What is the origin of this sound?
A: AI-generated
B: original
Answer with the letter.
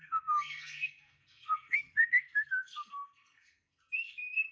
A